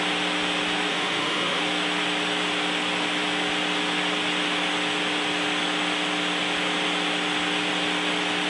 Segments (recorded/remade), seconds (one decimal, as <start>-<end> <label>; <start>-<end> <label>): 0.0-0.9 recorded; 0.9-1.6 remade; 1.6-8.5 recorded